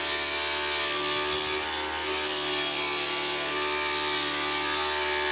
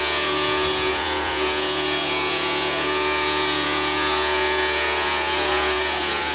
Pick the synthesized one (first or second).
second